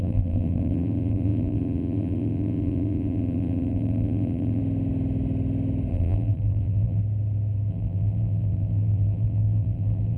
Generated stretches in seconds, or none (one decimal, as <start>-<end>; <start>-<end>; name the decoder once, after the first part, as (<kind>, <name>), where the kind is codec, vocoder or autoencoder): 0.0-4.6 (vocoder, BigVGAN v2); 5.9-7.0; 7.7-10.2